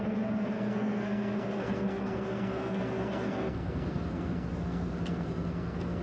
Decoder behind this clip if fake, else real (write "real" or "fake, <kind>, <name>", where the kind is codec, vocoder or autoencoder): fake, codec, SNAC